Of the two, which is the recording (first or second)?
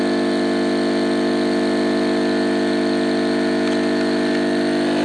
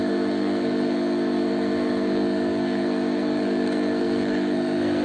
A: first